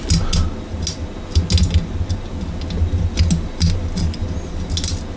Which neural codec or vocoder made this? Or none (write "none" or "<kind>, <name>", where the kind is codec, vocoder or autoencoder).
none